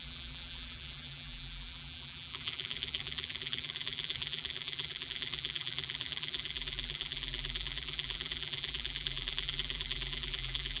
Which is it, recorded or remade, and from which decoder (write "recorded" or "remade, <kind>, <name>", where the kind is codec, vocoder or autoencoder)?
remade, vocoder, BigVGAN v2